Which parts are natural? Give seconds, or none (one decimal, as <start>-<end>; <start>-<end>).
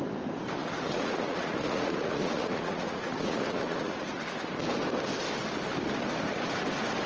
0.0-0.6; 4.2-7.1